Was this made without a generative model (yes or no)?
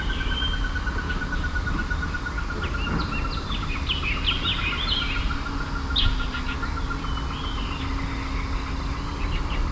yes